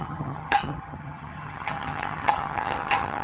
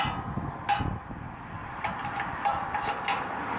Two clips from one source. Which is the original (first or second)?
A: second